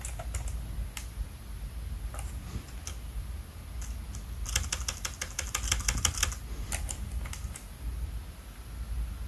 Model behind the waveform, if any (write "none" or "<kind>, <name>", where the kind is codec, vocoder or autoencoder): none